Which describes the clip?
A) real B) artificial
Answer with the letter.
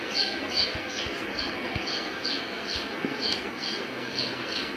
B